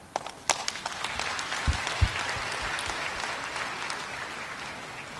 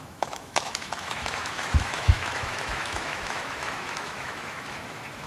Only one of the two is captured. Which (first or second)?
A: first